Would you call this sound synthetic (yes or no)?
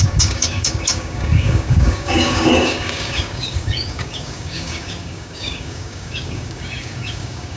yes